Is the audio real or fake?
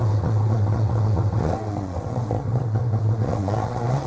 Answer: fake